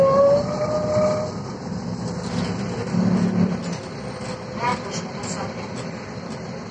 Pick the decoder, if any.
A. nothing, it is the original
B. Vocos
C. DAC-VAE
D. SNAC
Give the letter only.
A